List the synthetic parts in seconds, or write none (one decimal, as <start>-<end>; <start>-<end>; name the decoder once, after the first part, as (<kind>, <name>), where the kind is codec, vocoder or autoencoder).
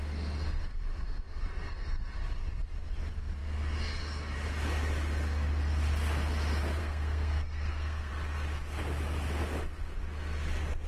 6.8-8.1 (codec, SNAC)